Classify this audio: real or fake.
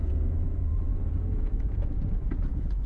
fake